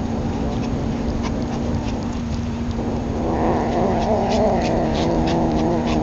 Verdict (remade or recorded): remade